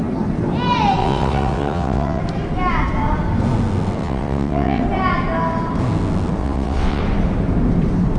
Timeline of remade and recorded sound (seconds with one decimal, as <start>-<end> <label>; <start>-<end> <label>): 0.0-1.0 recorded; 1.0-2.2 remade; 2.2-4.0 recorded; 4.0-4.8 remade; 4.8-6.4 recorded; 6.4-7.0 remade; 7.0-8.2 recorded